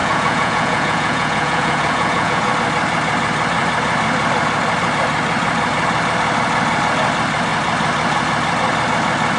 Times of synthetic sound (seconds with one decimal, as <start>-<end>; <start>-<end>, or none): 0.0-2.5